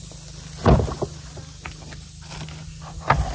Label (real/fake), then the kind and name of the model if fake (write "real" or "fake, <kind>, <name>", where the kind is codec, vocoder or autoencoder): real